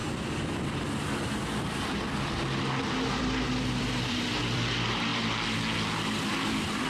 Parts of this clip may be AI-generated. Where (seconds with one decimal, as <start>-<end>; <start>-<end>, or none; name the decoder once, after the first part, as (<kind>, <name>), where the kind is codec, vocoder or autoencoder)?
2.8-5.1 (vocoder, BigVGAN v2); 6.3-6.9